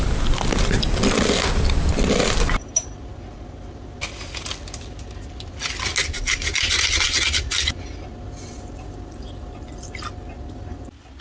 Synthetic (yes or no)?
no